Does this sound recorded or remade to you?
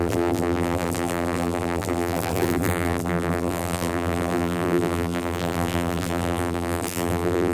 remade